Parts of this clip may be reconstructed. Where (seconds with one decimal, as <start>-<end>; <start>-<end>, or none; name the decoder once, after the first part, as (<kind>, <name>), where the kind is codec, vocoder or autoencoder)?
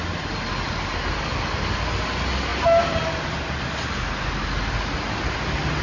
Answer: none